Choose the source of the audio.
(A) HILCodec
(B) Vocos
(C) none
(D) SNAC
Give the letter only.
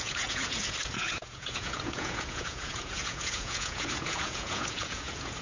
B